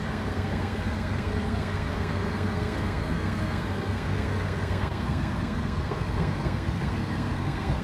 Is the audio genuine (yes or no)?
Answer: no